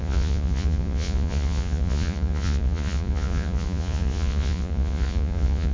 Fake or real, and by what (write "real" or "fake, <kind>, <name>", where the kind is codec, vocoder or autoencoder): fake, vocoder, Vocos